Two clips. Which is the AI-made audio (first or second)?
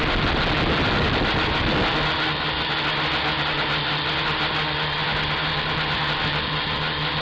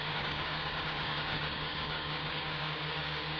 second